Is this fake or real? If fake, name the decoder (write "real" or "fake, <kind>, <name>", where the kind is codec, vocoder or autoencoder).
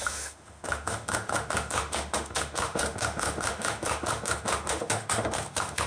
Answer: fake, autoencoder, DAC-VAE